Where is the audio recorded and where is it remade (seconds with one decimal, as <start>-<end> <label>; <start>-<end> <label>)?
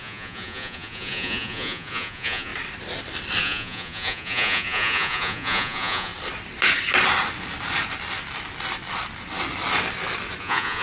0.0-2.5 remade; 2.5-3.4 recorded; 3.4-6.1 remade; 6.1-10.4 recorded; 10.4-10.8 remade